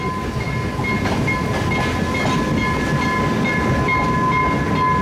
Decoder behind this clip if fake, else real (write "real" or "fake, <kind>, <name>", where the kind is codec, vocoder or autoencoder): real